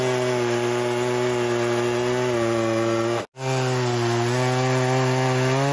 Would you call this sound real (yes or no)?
yes